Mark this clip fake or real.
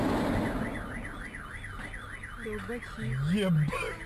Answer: real